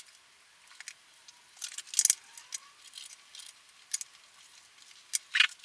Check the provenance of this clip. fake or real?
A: real